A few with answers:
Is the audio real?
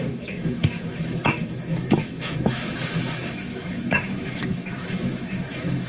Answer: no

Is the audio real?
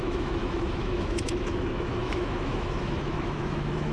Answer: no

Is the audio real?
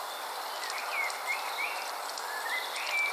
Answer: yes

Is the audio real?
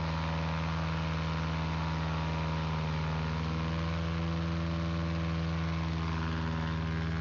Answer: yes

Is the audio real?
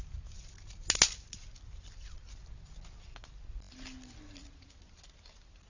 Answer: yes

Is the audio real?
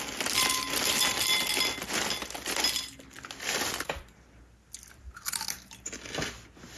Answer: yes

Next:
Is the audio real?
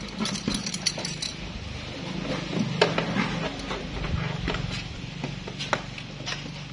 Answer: yes